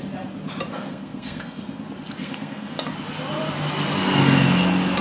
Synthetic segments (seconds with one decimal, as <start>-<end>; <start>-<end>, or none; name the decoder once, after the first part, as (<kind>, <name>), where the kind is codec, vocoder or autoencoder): 0.7-1.6 (codec, SNAC); 2.2-2.9